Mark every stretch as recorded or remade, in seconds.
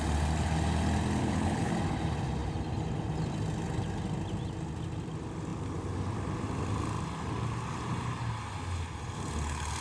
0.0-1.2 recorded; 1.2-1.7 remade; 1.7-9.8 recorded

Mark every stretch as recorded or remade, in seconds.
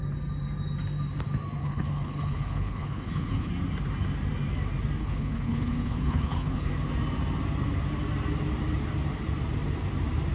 0.0-1.6 recorded; 1.6-3.5 remade; 3.5-5.0 recorded; 5.0-6.7 remade; 6.7-10.3 recorded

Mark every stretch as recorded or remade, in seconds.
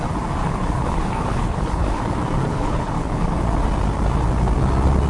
0.0-0.4 recorded; 0.4-2.0 remade; 2.0-2.5 recorded; 2.5-3.4 remade; 3.4-5.1 recorded